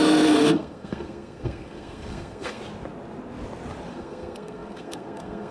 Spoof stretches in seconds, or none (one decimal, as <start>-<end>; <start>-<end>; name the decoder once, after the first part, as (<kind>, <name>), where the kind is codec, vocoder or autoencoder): 0.0-2.6 (codec, SNAC); 3.9-5.5